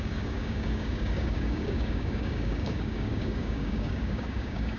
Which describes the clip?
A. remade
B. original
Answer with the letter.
A